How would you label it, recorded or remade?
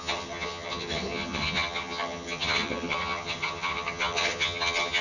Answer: remade